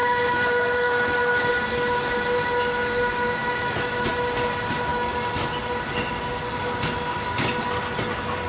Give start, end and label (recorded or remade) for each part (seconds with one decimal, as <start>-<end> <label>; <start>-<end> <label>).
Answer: 0.0-1.5 remade; 1.5-3.4 recorded; 3.4-4.1 remade; 4.1-4.9 recorded; 4.9-5.5 remade; 5.5-8.5 recorded